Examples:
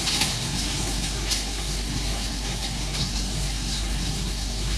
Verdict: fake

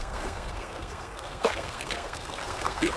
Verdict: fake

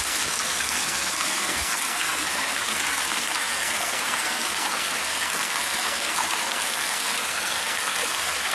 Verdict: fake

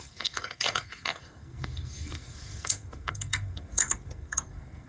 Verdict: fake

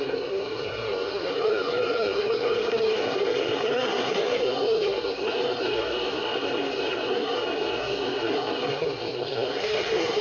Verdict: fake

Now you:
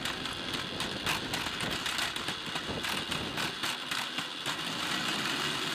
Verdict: real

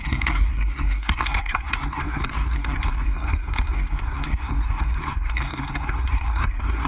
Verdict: fake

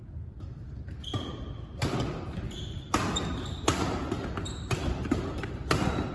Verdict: real